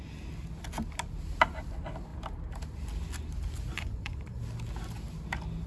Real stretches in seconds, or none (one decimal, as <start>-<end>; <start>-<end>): 0.0-3.7; 4.4-5.7